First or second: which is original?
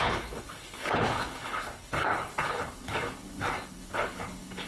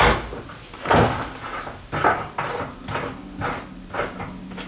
second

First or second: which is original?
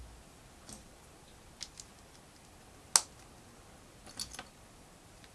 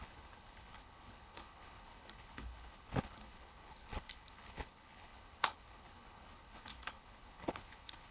first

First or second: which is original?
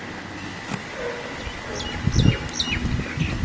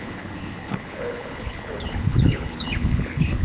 first